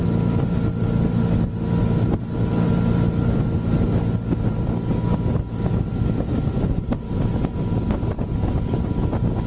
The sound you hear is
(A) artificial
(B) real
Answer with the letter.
B